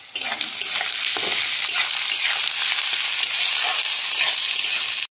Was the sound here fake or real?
real